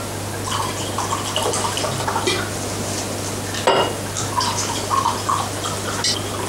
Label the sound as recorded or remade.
recorded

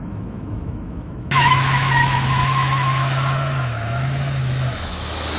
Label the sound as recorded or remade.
remade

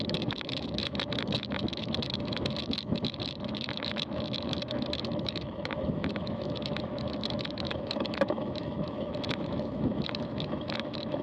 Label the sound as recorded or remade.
remade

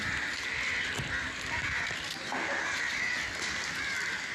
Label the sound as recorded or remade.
recorded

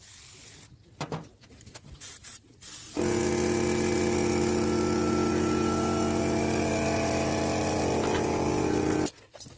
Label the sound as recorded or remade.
recorded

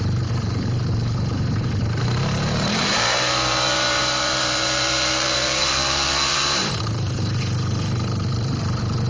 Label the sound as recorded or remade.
remade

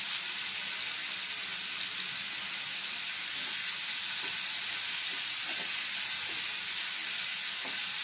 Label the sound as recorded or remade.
recorded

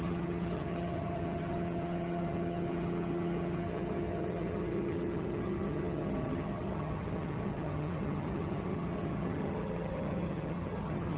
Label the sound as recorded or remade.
remade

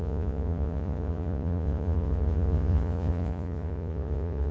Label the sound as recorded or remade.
remade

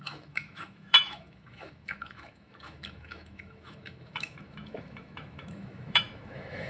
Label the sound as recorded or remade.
remade